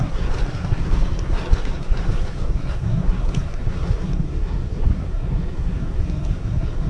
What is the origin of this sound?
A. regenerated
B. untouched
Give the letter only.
A